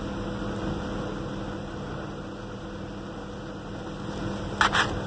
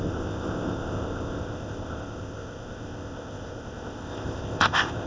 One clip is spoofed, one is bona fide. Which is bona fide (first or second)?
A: first